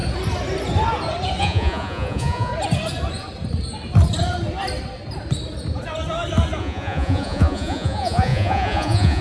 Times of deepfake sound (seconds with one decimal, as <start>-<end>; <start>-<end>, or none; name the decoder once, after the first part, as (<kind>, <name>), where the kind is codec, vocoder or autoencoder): 1.4-2.5 (vocoder, Vocos); 6.6-9.2

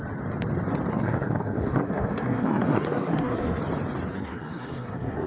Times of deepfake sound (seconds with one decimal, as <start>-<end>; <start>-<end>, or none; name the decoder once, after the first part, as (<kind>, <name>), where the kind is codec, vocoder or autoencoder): 0.9-3.6 (codec, SNAC); 4.1-5.3

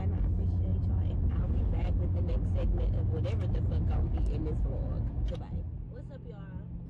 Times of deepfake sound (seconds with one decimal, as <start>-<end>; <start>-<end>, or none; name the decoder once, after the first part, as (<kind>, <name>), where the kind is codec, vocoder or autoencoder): 0.7-1.6 (vocoder, BigVGAN v2)

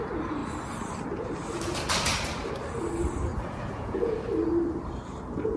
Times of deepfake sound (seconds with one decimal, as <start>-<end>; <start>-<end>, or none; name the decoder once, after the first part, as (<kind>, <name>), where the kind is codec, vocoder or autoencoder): 3.3-4.2 (vocoder, Vocos)